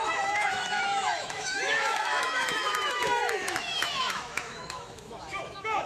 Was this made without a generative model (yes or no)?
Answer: no